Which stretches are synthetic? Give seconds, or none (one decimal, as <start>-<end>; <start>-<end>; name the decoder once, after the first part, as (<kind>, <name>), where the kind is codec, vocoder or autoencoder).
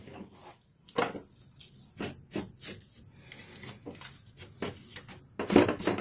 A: none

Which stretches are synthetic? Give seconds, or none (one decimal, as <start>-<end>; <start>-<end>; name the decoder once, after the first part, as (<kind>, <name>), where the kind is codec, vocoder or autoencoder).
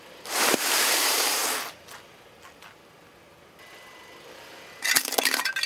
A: 0.0-1.4 (vocoder, BigVGAN v2); 4.8-5.7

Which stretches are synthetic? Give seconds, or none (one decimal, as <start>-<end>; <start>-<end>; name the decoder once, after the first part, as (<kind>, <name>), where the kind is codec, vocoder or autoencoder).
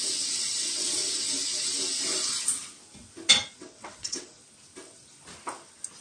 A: 0.0-1.0 (vocoder, WaveNeXt); 3.5-4.4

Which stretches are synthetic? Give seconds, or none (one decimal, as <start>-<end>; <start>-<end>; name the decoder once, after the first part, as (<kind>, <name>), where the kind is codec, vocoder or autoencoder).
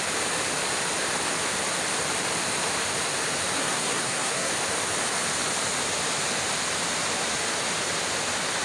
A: 3.6-4.5 (codec, SNAC)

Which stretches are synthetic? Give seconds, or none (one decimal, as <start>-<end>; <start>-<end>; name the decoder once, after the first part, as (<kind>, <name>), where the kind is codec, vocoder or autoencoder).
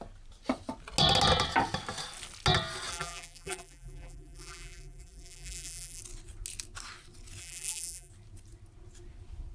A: 2.9-6.0 (vocoder, BigVGAN v2); 7.4-8.1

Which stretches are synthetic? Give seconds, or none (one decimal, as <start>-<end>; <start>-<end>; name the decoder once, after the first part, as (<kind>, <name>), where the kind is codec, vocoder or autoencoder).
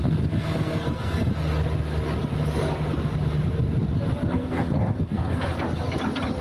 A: 0.0-1.3 (codec, SNAC); 4.3-5.5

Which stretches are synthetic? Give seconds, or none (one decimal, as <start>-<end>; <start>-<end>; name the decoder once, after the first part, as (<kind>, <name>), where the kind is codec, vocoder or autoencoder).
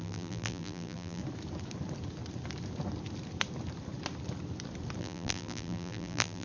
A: 0.0-1.2 (vocoder, BigVGAN v2); 5.0-6.4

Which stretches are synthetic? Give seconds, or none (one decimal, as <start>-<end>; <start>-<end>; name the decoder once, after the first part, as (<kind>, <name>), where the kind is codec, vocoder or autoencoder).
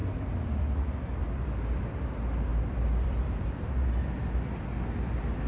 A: 0.0-0.6 (vocoder, BigVGAN v2); 1.2-1.8; 2.5-3.8